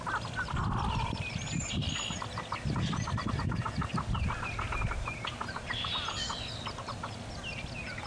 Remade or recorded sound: recorded